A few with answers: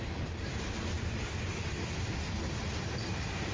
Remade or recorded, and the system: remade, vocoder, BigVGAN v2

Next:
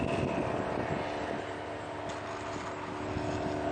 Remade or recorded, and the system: recorded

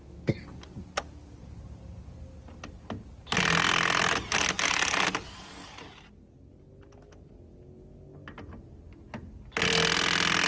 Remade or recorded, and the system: recorded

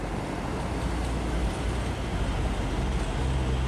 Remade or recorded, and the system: recorded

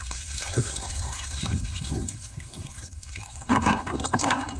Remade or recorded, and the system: remade, codec, SNAC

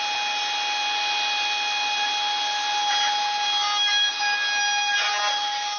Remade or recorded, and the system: recorded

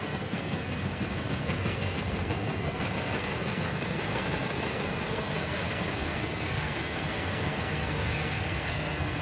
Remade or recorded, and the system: remade, codec, SNAC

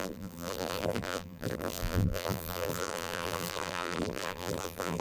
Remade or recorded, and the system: remade, vocoder, BigVGAN v2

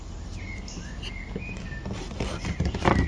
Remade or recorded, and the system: recorded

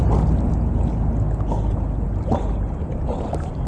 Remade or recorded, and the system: recorded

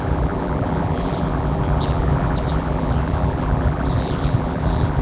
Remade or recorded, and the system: remade, vocoder, BigVGAN v2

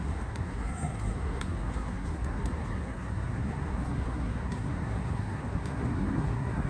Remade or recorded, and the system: remade, codec, SNAC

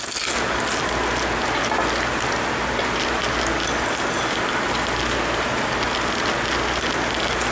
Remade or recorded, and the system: recorded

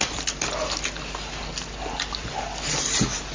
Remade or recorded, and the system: recorded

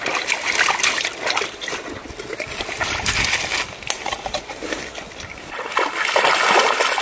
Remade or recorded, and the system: recorded